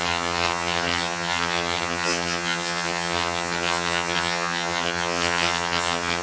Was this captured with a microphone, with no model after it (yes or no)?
no